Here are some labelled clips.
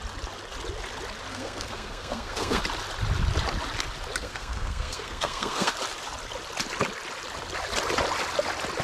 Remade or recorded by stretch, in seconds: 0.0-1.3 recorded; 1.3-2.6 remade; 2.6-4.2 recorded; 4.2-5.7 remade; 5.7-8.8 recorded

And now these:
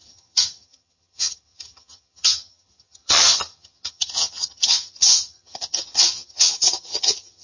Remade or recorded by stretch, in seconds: 0.0-7.4 remade

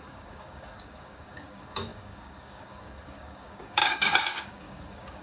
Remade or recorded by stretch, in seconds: 0.0-5.2 remade

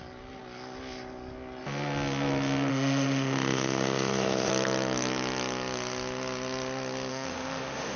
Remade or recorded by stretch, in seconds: 0.0-2.7 recorded; 2.7-4.5 remade; 4.5-7.1 recorded; 7.1-8.0 remade

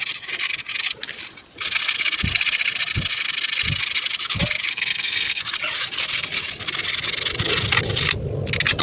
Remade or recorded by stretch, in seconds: 0.0-4.7 recorded; 4.7-5.4 remade; 5.4-8.8 recorded

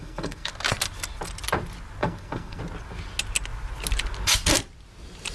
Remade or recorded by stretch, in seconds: 0.0-0.5 remade; 0.5-2.0 recorded; 2.0-2.6 remade; 2.6-5.3 recorded

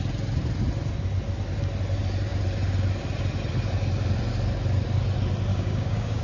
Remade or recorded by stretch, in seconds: 0.0-5.5 recorded; 5.5-6.2 remade